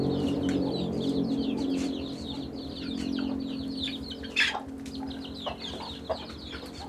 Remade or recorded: recorded